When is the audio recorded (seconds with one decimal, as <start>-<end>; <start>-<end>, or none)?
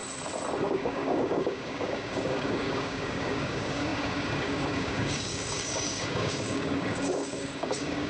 0.0-0.6